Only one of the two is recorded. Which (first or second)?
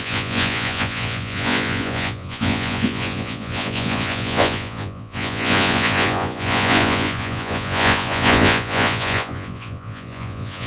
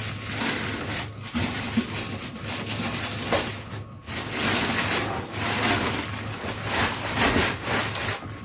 second